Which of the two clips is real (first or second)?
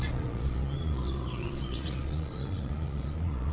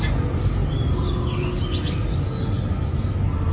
second